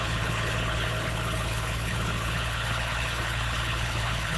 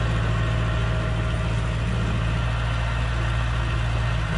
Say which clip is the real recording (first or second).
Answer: second